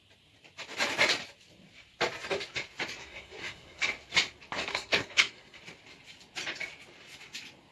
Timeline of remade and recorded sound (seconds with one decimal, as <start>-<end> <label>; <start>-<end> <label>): 0.0-3.0 recorded; 3.0-3.8 remade; 3.8-4.7 recorded; 4.7-5.6 remade; 5.6-7.7 recorded